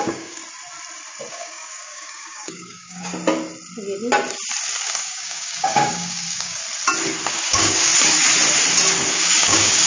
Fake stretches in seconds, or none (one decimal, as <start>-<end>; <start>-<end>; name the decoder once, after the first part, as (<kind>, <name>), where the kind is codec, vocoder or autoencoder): 0.0-0.4 (codec, DAC); 1.3-3.1; 4.8-6.6; 7.3-7.9; 9.1-9.9